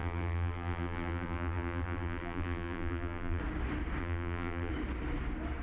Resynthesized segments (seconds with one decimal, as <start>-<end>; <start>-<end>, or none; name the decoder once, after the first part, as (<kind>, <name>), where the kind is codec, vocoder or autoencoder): 0.0-3.4 (vocoder, BigVGAN v2); 4.0-4.7